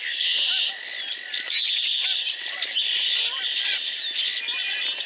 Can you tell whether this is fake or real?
real